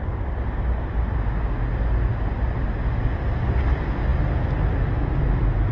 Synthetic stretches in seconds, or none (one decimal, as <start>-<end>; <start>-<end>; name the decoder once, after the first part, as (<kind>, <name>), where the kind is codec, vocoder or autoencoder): none